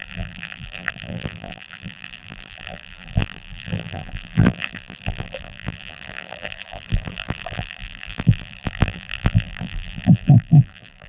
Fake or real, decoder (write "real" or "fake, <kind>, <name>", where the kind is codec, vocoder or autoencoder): fake, vocoder, BigVGAN v2